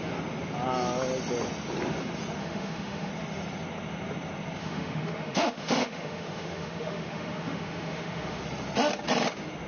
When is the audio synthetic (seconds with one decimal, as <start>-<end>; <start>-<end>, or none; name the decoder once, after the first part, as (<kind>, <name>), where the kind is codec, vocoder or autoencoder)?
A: 2.4-3.1 (autoencoder, DAC-VAE); 4.6-8.4